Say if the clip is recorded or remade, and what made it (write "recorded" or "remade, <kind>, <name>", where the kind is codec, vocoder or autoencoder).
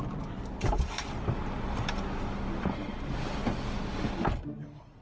recorded